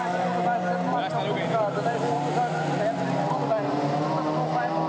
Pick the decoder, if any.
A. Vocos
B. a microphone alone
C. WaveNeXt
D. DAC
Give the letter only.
B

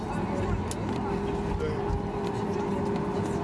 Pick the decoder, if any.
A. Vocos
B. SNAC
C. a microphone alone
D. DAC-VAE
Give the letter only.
C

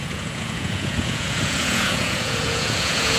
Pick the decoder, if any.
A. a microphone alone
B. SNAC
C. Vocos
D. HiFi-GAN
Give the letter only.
C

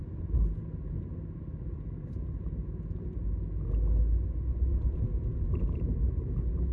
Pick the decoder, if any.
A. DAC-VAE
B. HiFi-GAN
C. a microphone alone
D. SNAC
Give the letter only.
C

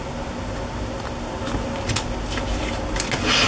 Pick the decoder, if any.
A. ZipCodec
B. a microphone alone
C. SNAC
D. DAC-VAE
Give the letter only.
B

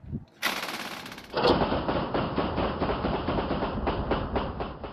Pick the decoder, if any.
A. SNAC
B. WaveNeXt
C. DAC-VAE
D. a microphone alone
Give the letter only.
D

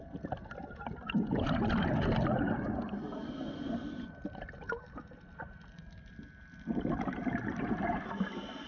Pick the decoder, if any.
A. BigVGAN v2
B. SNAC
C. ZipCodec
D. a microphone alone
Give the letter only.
D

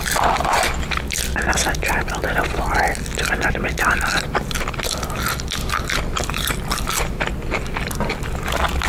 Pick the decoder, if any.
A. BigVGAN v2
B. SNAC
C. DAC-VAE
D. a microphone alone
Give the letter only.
D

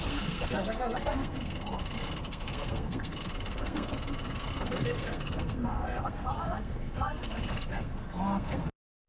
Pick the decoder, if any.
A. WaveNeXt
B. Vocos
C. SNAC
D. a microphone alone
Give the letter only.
C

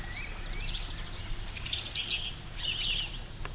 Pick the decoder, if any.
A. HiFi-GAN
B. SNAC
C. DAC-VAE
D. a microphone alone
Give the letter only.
D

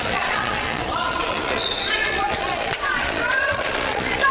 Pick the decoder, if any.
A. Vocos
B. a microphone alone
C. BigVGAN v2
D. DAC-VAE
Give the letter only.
A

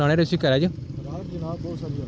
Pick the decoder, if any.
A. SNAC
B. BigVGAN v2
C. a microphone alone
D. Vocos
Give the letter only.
C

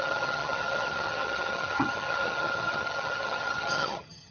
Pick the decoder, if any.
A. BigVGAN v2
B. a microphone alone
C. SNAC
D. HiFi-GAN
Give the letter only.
D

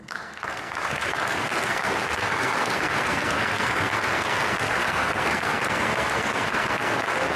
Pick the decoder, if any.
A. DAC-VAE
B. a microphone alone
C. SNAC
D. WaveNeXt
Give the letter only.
C